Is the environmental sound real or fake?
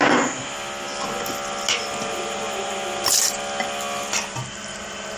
real